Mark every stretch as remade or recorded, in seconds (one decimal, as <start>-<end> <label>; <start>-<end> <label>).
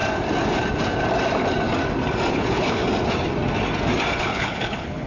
0.0-2.3 recorded; 2.3-2.8 remade; 2.8-4.2 recorded; 4.2-5.1 remade